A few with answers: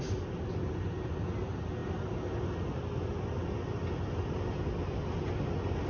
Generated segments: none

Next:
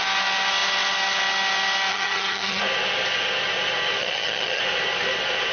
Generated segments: 1.9-2.6 (vocoder, HiFi-GAN); 4.0-4.6

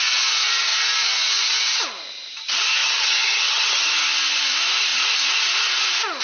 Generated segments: 2.8-3.9 (vocoder, HiFi-GAN)

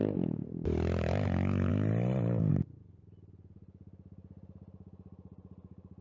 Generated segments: none

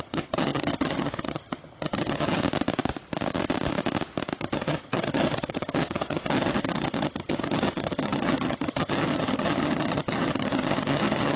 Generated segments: 0.0-2.4 (vocoder, HiFi-GAN); 4.4-11.4

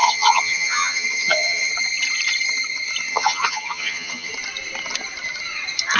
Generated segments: 0.0-1.7 (vocoder, HiFi-GAN); 3.1-4.3

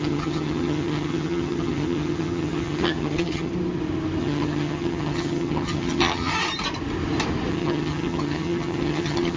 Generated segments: 0.0-3.5 (vocoder, HiFi-GAN); 4.2-6.3; 7.5-9.4